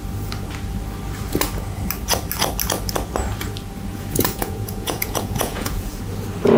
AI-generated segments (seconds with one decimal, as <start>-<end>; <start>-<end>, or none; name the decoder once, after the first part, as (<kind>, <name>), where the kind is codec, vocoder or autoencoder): 3.9-6.0 (vocoder, Vocos)